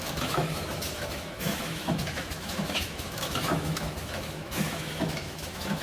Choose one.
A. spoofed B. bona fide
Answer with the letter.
A